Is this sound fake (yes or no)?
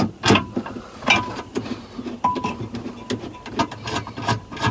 no